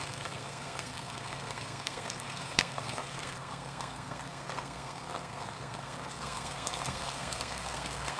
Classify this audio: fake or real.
fake